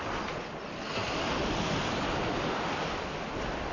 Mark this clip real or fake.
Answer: real